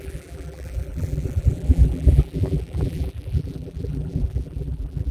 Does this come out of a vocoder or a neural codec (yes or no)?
yes